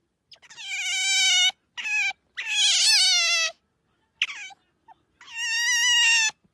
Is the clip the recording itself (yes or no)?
yes